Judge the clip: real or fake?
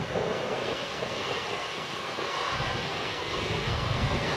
fake